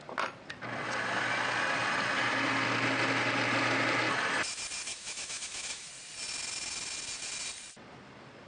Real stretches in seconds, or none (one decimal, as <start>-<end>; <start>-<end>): 0.0-4.9; 5.9-8.5